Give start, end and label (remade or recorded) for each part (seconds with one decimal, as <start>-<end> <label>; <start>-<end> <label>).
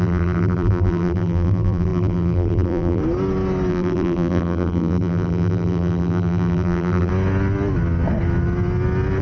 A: 0.0-3.0 remade; 3.0-3.7 recorded; 3.7-7.1 remade; 7.1-9.2 recorded